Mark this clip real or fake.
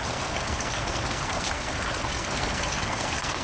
fake